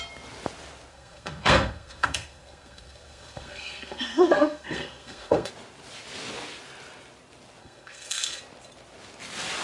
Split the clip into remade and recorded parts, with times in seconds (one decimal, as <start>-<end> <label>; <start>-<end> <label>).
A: 0.0-0.9 recorded; 0.9-5.5 remade; 5.5-7.6 recorded; 7.6-8.4 remade; 8.4-9.6 recorded